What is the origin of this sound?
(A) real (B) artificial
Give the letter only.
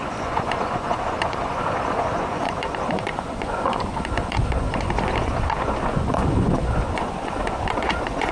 B